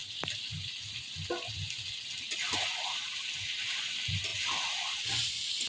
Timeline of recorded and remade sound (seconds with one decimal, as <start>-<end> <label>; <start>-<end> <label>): 0.0-0.8 remade; 0.8-1.8 recorded; 1.8-2.3 remade; 2.3-5.7 recorded